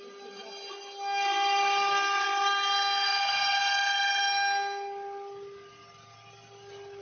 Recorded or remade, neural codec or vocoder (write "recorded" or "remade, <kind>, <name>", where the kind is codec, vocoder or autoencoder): recorded